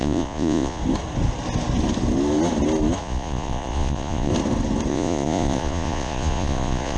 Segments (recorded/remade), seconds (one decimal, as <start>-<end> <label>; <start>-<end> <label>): 0.0-0.8 remade; 0.8-3.0 recorded; 3.0-4.3 remade; 4.3-4.9 recorded; 4.9-7.0 remade